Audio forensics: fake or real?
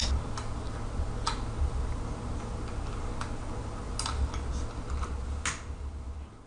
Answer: real